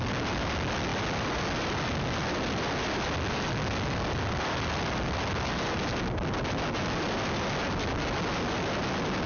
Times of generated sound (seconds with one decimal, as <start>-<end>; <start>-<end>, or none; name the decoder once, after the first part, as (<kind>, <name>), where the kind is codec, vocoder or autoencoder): none